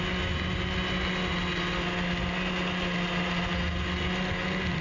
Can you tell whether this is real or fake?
real